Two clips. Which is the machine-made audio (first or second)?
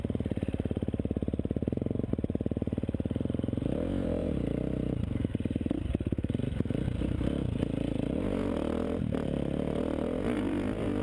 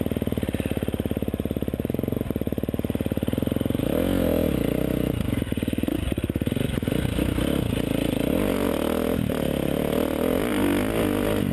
first